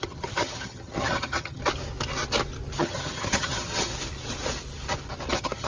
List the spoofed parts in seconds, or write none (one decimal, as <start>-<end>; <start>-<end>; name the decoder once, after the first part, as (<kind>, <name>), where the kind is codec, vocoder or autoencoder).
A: 0.0-1.6 (vocoder, HiFi-GAN); 2.8-3.9; 5.3-5.7